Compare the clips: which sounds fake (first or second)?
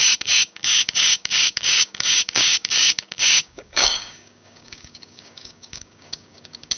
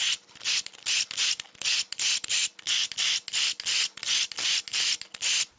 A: first